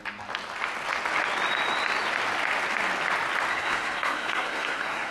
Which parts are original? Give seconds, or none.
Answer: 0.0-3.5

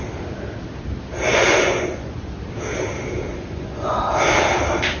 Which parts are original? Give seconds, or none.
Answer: 0.0-1.3; 2.3-3.3; 4.0-5.0